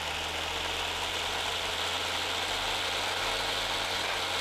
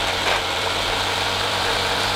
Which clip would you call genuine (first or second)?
first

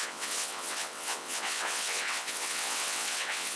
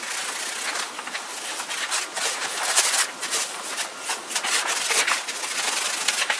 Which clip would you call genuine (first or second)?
second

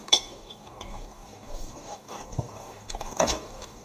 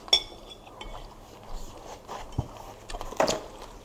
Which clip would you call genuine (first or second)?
second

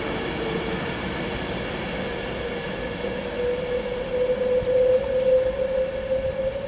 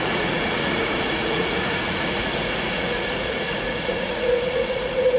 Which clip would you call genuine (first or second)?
first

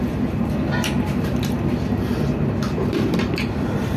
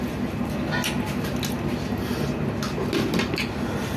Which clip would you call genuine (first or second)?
second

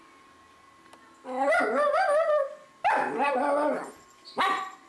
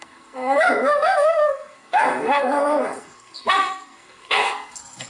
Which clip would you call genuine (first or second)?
first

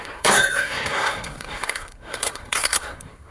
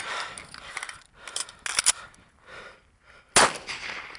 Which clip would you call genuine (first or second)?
second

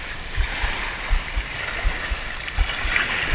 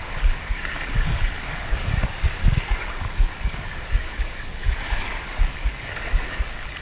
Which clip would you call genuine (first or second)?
first